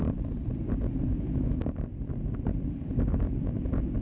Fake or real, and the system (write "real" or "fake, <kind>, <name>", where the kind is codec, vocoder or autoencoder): fake, vocoder, BigVGAN v2